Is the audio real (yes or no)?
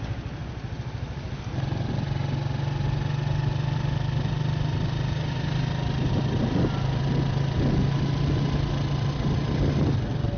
yes